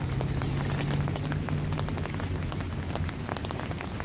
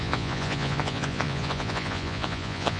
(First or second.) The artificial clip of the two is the second